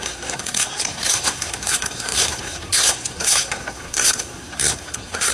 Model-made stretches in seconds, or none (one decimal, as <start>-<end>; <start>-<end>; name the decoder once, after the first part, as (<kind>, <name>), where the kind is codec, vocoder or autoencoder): 0.0-5.3 (codec, SNAC)